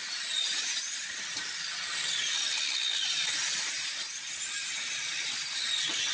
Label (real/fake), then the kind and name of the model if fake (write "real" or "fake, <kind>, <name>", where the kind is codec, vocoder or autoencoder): real